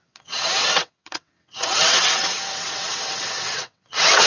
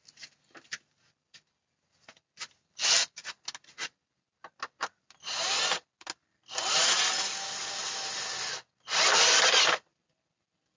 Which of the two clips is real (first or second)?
second